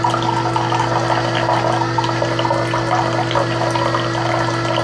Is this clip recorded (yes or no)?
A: yes